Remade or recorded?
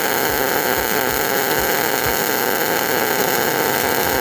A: recorded